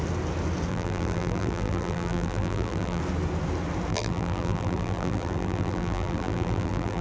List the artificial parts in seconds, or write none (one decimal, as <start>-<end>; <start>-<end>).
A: 0.7-3.0; 3.9-7.0